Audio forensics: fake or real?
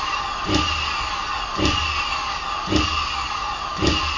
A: real